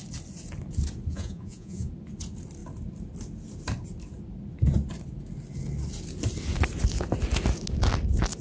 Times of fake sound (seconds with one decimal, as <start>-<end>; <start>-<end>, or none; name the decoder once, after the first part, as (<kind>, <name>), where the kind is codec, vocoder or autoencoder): 1.1-1.9 (vocoder, Vocos)